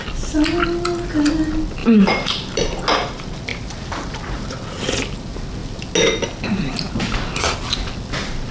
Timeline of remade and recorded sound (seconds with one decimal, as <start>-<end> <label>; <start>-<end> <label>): 0.0-1.8 recorded; 1.8-2.8 remade; 2.8-3.5 recorded; 3.5-4.5 remade; 4.5-8.5 recorded